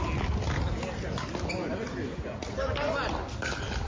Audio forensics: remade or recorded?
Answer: recorded